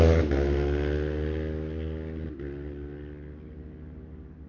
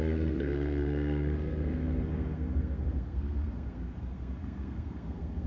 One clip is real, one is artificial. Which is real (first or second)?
first